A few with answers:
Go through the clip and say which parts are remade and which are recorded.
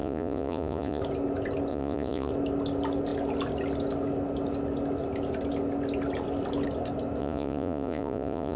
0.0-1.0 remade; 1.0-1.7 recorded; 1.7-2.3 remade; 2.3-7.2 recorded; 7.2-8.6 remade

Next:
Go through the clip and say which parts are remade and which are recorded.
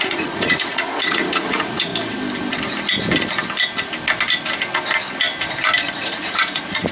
0.0-1.9 remade; 1.9-6.0 recorded; 6.0-6.9 remade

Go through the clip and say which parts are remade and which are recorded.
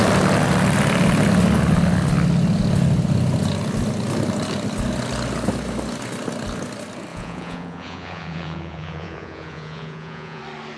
0.0-7.1 recorded; 7.1-10.4 remade; 10.4-10.8 recorded